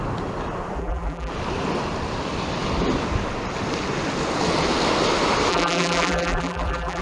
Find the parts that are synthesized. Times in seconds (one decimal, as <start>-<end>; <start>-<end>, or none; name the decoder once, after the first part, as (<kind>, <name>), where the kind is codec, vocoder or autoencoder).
0.8-1.3 (vocoder, BigVGAN v2); 5.5-7.0